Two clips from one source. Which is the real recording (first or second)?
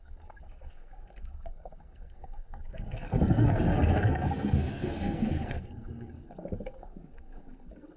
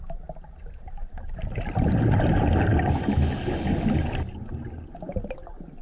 second